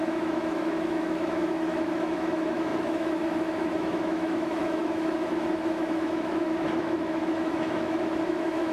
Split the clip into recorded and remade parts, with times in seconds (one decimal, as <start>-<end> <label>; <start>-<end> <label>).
0.0-8.7 remade